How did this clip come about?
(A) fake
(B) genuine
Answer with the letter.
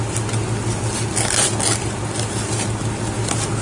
B